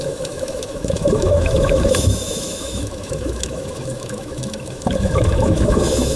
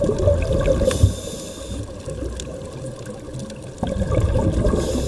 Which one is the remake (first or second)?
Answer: first